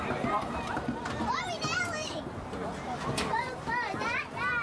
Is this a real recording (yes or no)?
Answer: yes